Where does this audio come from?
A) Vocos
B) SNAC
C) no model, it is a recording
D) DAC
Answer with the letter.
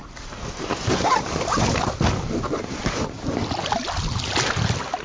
C